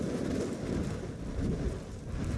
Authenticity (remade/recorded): recorded